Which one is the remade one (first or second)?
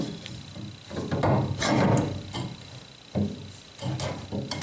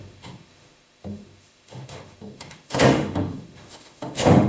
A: second